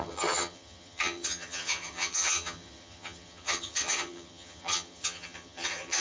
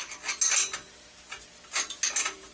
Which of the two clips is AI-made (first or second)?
first